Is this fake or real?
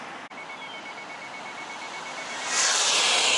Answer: real